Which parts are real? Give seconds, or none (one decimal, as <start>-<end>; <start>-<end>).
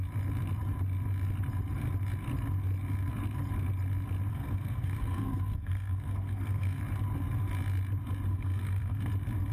0.0-4.3; 6.8-8.3; 9.0-9.5